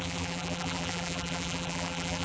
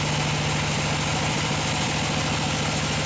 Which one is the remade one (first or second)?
first